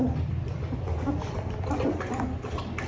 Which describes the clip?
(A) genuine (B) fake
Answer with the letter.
A